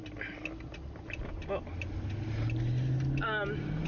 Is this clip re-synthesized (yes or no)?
no